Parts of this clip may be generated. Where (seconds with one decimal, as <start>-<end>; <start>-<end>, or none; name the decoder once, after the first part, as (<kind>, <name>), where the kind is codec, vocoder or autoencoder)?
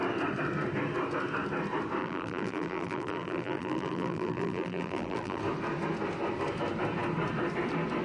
2.0-5.4 (vocoder, BigVGAN v2)